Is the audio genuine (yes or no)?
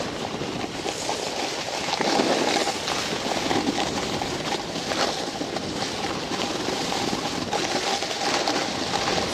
yes